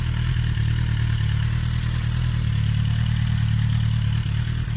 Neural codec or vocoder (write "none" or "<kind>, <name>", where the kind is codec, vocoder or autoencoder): none